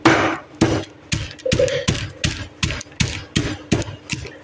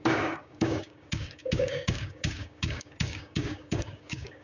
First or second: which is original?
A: first